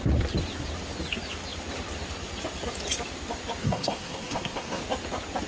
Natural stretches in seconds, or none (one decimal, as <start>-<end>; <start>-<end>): 0.0-3.6; 4.8-5.5